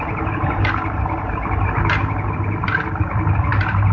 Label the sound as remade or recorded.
recorded